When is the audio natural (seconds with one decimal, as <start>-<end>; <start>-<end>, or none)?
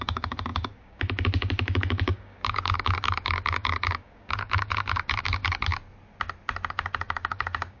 5.7-6.7